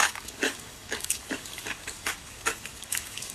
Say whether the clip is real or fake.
fake